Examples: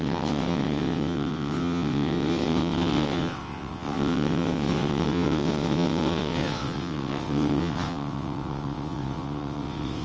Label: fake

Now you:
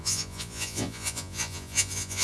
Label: fake